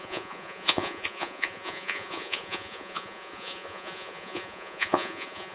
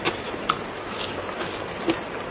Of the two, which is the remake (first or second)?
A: first